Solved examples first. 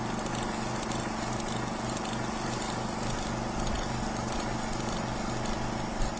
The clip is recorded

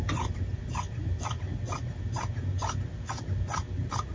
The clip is recorded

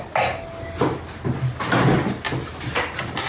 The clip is recorded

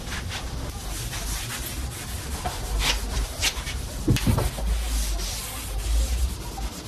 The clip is recorded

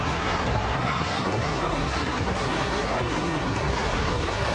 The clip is remade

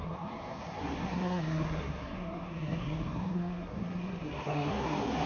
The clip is remade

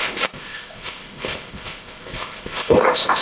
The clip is remade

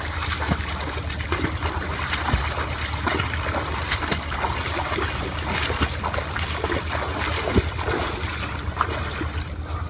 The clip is recorded